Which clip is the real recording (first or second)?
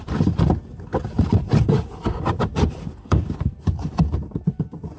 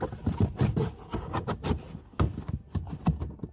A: second